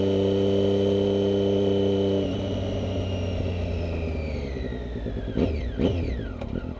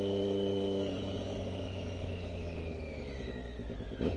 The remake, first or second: second